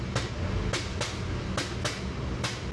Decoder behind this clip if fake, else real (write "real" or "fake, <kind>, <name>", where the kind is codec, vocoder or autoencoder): real